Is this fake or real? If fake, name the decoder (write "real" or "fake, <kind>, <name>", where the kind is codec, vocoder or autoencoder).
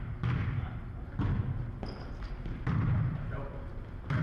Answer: fake, vocoder, BigVGAN v2